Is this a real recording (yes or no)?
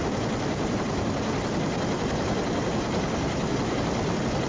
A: yes